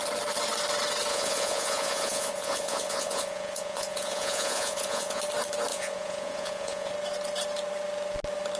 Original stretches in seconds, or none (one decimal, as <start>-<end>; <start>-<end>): 0.0-1.1; 5.2-5.7; 6.9-8.6